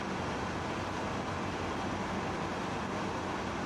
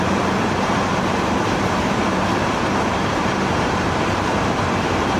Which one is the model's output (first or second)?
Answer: second